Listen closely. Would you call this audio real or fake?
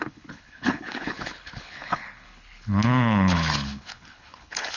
fake